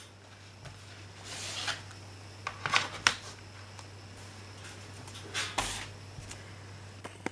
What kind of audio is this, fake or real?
real